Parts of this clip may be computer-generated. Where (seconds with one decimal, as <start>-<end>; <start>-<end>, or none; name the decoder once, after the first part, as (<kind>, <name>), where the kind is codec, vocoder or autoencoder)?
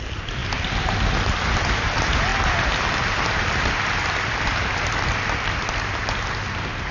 0.4-1.1 (vocoder, BigVGAN v2); 2.3-5.5